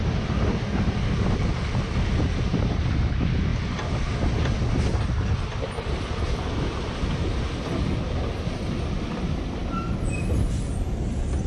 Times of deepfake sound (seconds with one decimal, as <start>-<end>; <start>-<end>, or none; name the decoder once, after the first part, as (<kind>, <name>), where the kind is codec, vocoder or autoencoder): none